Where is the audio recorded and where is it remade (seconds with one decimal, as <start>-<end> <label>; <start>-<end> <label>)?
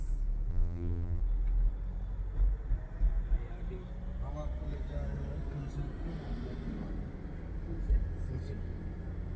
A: 0.0-0.5 recorded; 0.5-1.2 remade; 1.2-9.4 recorded